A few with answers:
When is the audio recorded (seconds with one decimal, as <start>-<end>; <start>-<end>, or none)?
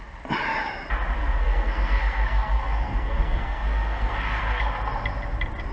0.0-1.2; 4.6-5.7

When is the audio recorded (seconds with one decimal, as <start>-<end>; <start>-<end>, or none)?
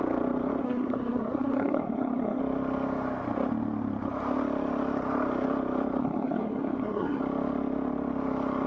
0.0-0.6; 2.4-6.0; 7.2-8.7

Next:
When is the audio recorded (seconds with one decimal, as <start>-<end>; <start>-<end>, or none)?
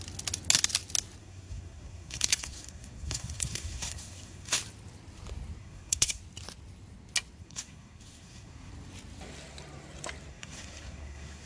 0.0-1.2; 4.6-5.6; 6.2-7.4; 8.7-10.3